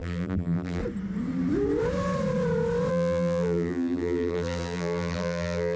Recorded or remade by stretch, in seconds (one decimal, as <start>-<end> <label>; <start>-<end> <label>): 0.0-0.8 remade; 0.8-2.9 recorded; 2.9-5.8 remade